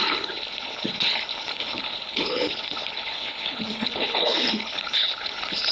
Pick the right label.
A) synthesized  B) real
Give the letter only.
A